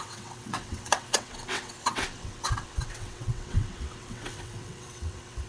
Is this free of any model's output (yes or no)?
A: no